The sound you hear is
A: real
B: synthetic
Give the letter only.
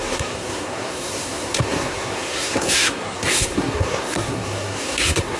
B